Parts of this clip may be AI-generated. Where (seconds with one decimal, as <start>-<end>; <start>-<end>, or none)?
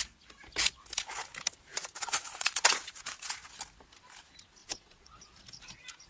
1.7-3.5; 4.6-5.2